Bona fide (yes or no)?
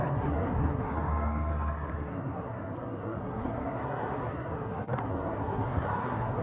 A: no